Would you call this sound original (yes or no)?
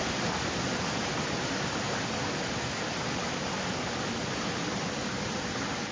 yes